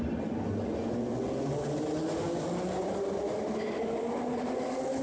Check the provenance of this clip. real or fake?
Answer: real